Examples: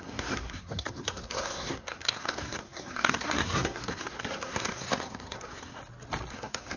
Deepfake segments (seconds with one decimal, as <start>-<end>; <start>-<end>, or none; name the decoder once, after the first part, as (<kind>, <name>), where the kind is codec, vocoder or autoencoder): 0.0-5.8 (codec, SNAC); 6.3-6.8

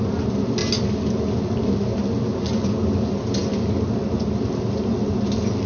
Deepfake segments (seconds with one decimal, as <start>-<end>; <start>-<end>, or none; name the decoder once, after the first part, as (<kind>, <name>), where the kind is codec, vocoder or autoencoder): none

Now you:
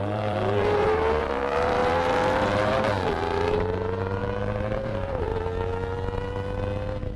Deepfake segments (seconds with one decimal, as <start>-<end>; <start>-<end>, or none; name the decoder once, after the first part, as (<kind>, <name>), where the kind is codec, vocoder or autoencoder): 0.0-5.3 (vocoder, BigVGAN v2)

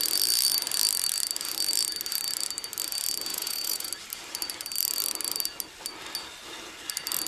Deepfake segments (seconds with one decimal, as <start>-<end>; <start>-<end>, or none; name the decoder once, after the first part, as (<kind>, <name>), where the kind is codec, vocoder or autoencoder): 3.3-3.9 (vocoder, Vocos)

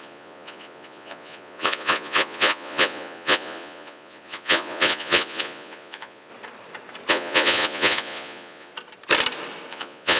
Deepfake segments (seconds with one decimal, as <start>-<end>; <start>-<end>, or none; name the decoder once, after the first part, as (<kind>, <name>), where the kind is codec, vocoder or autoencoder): 0.0-6.3 (vocoder, Vocos); 7.1-8.7; 9.7-10.2

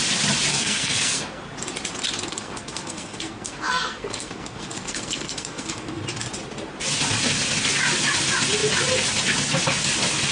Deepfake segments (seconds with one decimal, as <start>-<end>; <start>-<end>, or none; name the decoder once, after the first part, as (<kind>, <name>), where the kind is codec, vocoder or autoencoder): 0.5-1.4 (codec, SNAC); 2.3-6.0

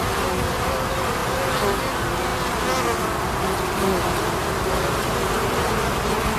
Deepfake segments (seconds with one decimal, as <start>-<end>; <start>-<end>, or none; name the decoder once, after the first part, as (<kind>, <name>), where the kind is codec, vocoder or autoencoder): none